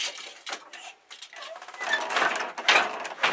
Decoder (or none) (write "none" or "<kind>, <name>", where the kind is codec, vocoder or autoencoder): none